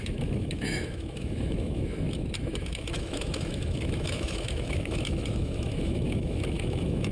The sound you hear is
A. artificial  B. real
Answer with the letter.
A